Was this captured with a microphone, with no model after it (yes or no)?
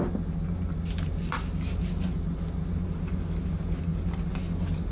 yes